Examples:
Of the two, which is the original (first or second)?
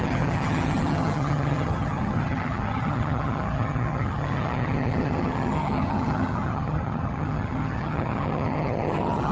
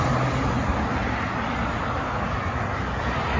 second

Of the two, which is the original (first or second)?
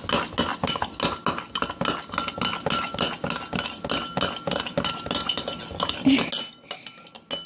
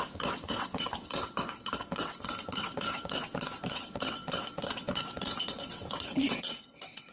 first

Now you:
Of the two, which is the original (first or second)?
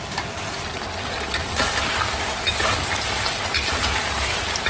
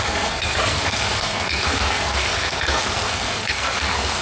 first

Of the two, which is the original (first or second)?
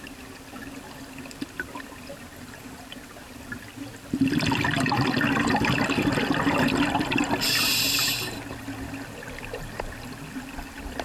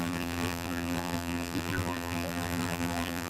first